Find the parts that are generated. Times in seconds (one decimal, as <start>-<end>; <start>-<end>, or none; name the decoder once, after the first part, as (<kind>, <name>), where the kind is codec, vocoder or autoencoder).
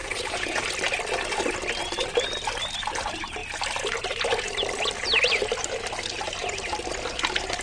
0.0-0.6 (vocoder, Vocos)